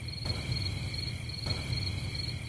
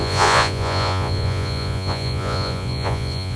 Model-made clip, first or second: second